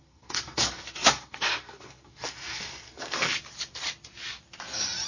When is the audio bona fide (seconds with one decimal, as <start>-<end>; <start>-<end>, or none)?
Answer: 3.3-5.1